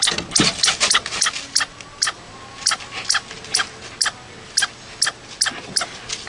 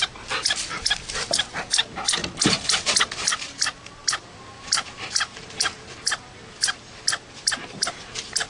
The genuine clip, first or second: first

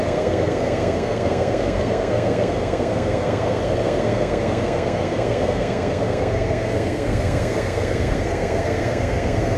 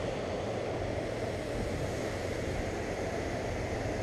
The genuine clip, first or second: second